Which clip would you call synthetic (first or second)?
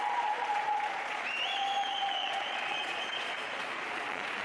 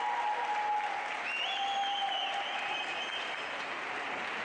first